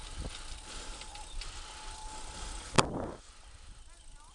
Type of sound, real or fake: real